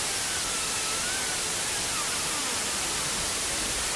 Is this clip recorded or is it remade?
recorded